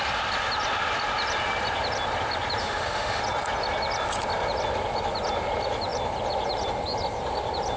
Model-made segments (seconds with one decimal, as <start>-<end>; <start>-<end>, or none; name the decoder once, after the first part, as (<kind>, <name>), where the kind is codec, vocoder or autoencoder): 2.6-3.2 (autoencoder, DAC-VAE)